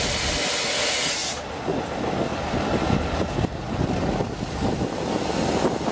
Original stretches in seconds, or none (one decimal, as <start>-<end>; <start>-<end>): 0.0-5.9